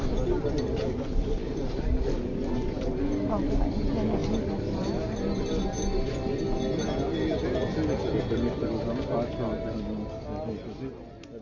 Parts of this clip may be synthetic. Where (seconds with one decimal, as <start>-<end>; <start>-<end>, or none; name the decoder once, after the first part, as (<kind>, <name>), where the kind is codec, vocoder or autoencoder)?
none